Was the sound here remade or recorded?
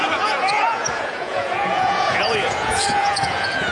remade